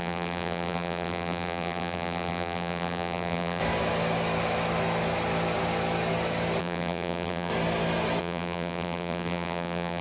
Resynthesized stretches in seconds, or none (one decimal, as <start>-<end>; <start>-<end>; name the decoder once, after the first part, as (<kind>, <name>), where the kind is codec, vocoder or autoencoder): 0.0-3.6 (vocoder, BigVGAN v2); 6.6-7.5; 8.2-10.0

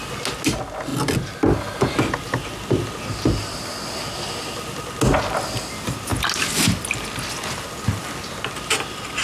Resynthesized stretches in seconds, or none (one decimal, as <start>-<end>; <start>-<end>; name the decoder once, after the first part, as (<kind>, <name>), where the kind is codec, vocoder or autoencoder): none

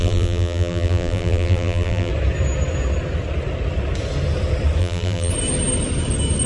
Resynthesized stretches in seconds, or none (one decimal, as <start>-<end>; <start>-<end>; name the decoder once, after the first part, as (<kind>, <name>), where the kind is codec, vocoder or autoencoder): 0.0-2.1 (vocoder, BigVGAN v2); 4.8-5.3

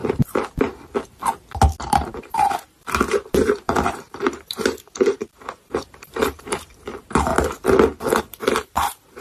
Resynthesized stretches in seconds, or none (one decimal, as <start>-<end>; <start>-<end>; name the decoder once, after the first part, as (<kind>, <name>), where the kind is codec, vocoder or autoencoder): 1.9-7.3 (vocoder, BigVGAN v2); 8.2-9.2

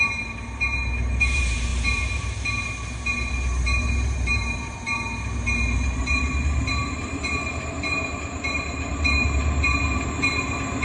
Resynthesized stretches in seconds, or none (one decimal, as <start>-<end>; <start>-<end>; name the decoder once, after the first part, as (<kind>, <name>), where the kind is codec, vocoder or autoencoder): 0.0-10.8 (vocoder, BigVGAN v2)

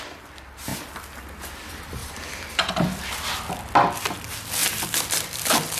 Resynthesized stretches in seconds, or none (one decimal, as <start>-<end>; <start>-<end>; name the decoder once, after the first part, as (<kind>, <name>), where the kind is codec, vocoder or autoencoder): 2.0-3.1 (vocoder, BigVGAN v2); 4.6-5.8

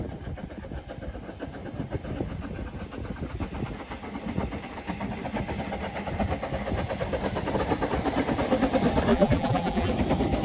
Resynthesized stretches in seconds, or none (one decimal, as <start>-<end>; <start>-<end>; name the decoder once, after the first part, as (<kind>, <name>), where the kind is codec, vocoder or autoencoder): 9.1-9.9 (vocoder, BigVGAN v2)